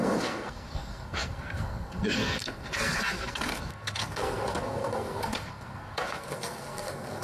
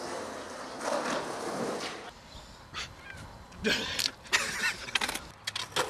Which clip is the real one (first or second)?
second